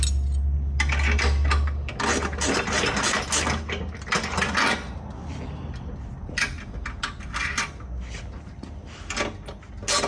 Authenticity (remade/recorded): recorded